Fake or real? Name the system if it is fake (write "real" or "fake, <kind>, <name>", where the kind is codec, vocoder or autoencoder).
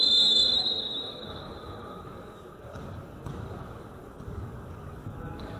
fake, codec, DAC